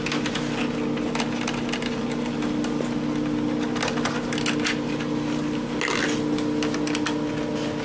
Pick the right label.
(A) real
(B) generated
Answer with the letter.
A